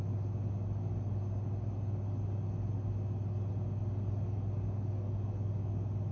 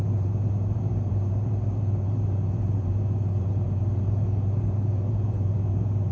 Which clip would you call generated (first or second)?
second